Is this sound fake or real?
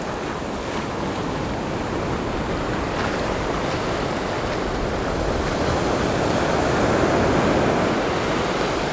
real